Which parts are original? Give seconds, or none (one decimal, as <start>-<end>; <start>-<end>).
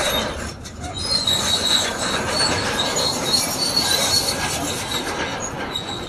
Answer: 0.0-0.9; 2.3-5.3